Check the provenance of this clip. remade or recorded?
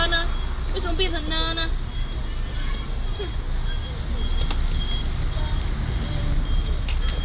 recorded